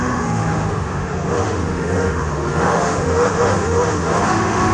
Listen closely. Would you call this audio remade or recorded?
remade